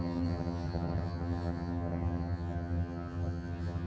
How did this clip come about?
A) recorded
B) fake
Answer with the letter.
B